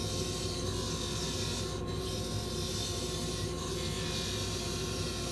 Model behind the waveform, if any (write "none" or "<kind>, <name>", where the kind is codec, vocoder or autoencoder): none